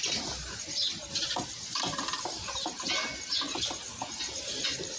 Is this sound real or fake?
fake